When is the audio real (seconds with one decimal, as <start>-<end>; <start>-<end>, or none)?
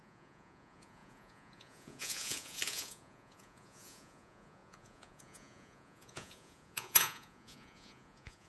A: none